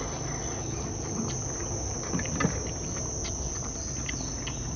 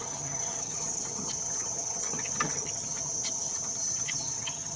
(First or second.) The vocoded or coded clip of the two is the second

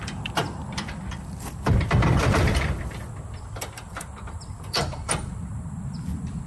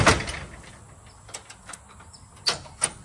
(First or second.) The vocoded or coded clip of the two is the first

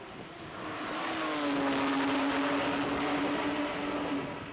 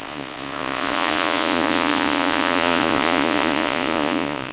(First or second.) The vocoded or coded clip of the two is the second